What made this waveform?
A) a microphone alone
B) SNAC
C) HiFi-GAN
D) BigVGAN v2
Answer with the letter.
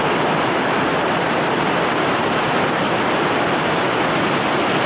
A